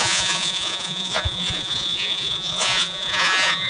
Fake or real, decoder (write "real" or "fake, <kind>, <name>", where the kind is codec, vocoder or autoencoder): fake, vocoder, Vocos